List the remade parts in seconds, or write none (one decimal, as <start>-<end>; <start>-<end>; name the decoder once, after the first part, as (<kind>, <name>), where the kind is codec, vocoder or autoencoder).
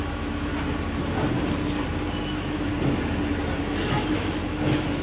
0.0-0.5 (autoencoder, DAC-VAE); 2.2-2.7; 3.6-5.0